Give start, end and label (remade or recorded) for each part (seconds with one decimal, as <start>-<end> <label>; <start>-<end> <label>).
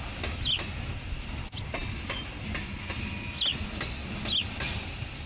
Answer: 0.0-5.3 recorded